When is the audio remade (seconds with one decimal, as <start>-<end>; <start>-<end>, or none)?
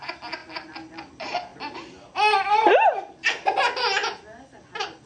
none